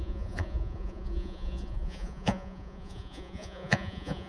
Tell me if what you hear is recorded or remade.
remade